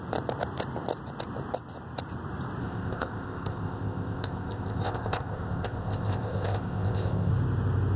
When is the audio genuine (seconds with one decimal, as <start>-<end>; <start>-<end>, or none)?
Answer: 0.0-2.6; 7.3-8.0